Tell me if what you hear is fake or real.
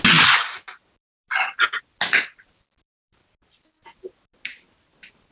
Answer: real